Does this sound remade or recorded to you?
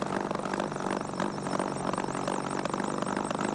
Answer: recorded